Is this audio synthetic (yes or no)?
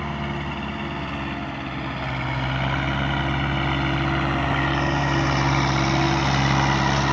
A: no